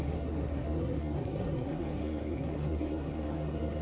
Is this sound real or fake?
fake